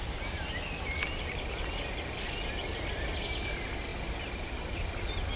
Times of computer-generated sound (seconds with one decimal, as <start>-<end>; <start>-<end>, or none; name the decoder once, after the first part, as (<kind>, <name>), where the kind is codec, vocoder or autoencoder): none

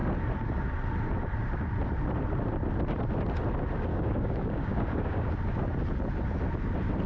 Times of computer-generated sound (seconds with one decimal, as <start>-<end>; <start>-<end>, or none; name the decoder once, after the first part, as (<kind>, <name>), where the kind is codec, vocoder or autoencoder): 3.9-5.3 (codec, DAC)